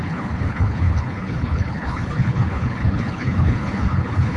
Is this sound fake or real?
fake